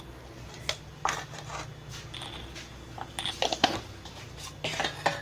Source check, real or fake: real